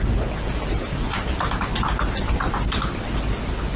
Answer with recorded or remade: recorded